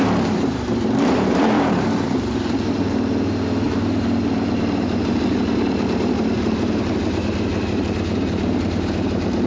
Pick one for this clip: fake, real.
fake